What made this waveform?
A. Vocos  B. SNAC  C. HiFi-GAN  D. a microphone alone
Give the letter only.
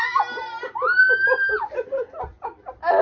D